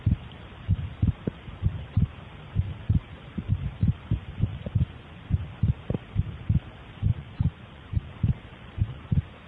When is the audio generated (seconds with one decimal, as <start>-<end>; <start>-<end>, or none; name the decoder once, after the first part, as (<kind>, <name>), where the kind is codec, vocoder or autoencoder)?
4.5-5.4 (vocoder, Vocos); 7.1-8.1; 8.5-9.5